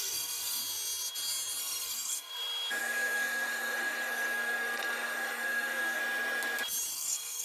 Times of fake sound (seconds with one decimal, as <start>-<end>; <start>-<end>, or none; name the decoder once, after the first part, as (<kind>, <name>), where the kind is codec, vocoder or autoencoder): 0.0-0.6 (codec, SNAC); 1.6-2.3; 2.8-6.0; 6.9-7.4